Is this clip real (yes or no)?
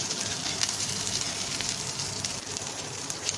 no